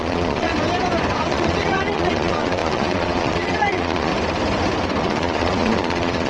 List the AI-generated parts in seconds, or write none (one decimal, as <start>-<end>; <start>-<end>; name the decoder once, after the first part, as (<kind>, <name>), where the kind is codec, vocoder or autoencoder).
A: 0.0-0.5 (vocoder, Vocos); 1.2-4.1; 5.0-6.3